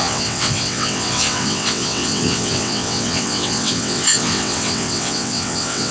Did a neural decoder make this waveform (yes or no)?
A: yes